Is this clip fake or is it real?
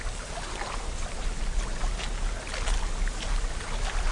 real